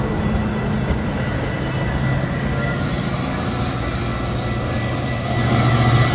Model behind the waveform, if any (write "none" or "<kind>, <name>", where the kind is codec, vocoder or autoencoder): none